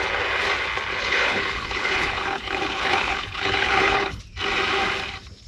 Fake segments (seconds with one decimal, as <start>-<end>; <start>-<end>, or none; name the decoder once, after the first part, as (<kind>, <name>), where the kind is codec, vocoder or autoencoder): 0.9-4.2 (codec, HILCodec)